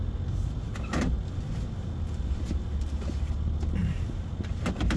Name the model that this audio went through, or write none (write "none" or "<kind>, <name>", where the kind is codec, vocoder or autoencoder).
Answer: none